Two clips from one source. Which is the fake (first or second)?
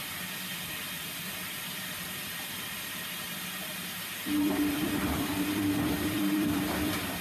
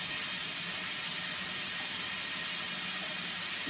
first